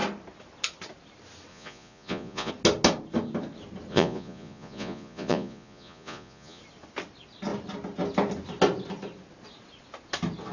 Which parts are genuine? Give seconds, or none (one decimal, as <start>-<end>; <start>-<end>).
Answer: 0.0-1.5; 2.5-3.9; 6.6-10.5